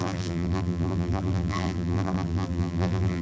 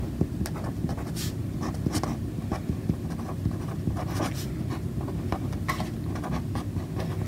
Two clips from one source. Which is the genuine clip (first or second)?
second